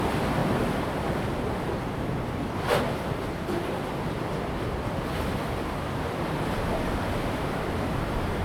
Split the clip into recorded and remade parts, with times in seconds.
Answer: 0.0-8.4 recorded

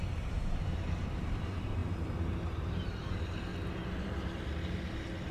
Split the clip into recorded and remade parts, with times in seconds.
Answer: 0.0-3.5 remade; 3.5-5.3 recorded

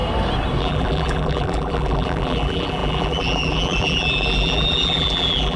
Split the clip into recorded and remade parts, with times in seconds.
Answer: 0.0-0.6 recorded; 0.6-5.6 remade

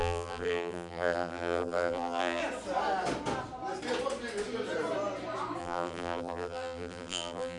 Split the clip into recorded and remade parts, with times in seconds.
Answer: 0.0-2.4 remade; 2.4-5.6 recorded; 5.6-7.6 remade